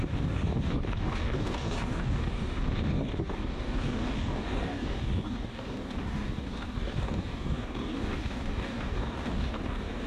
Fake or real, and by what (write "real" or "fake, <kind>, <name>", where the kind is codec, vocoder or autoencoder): fake, codec, DAC